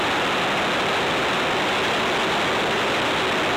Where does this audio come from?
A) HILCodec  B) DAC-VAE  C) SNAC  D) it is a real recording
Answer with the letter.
D